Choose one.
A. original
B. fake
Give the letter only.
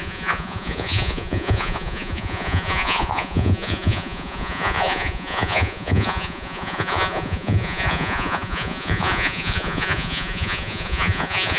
B